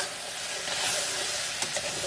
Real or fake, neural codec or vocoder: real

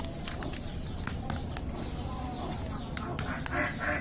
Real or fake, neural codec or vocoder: real